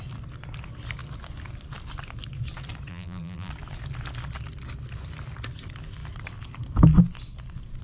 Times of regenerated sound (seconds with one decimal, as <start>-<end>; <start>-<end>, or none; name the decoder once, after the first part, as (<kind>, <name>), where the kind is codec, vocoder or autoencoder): 2.9-3.5 (vocoder, BigVGAN v2)